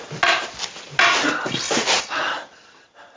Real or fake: real